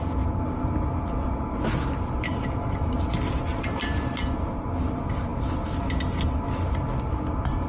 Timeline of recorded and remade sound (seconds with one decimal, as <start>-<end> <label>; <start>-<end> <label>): 0.0-2.3 recorded; 2.3-2.9 remade; 2.9-3.5 recorded; 3.5-4.1 remade; 4.1-7.7 recorded